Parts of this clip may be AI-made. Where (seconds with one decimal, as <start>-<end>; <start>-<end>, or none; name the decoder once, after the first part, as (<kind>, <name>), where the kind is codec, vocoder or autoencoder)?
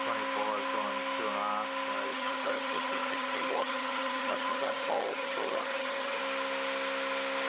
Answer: 2.1-6.2 (vocoder, HiFi-GAN)